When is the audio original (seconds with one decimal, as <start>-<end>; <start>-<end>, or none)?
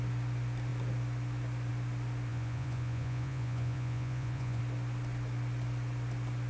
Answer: 0.0-2.3; 4.6-6.5